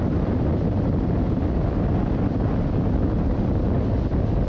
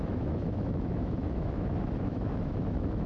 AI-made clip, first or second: second